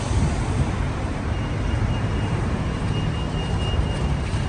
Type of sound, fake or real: fake